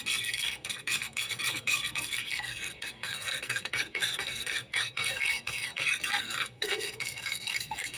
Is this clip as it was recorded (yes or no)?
no